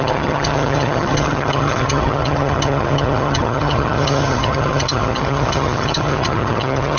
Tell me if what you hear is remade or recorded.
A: remade